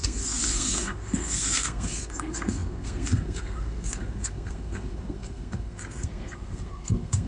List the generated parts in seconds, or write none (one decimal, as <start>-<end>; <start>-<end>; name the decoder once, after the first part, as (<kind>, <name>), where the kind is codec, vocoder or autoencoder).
0.0-7.3 (codec, SNAC)